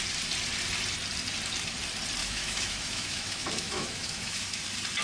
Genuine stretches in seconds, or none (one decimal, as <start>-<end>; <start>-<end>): 0.0-2.2; 4.6-5.0